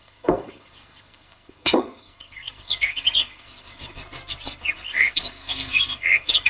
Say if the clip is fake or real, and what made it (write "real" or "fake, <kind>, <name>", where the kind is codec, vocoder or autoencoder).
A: fake, codec, SNAC